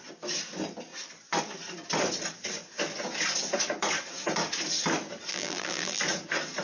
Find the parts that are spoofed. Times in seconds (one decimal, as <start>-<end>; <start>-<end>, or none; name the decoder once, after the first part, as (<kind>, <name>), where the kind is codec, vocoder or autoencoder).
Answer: 5.3-6.0 (vocoder, BigVGAN v2)